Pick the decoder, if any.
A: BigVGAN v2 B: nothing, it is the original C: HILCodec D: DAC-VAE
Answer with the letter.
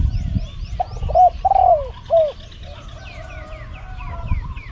B